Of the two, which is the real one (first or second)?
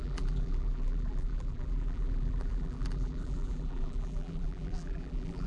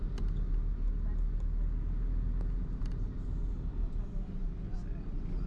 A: second